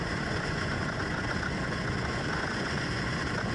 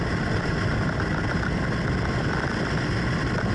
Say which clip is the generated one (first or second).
first